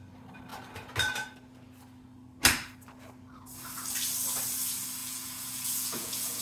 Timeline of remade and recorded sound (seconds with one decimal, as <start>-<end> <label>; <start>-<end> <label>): 0.0-5.0 recorded; 5.0-6.4 remade